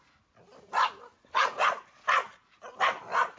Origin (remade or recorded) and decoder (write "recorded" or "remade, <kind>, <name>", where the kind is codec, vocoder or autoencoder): recorded